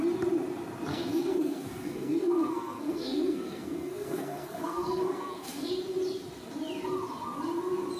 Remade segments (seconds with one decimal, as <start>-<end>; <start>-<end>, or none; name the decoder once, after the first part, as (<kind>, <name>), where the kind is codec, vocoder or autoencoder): 0.9-5.7 (codec, SNAC)